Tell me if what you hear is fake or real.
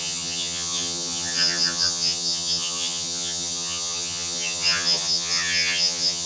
fake